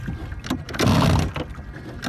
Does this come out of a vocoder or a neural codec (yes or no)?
no